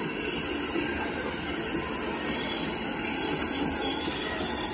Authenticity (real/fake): real